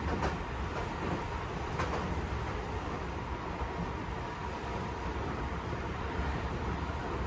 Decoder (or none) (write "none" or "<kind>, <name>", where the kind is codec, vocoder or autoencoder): vocoder, BigVGAN v2